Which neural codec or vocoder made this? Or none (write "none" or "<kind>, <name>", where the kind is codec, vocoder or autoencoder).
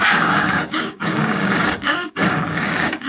codec, DAC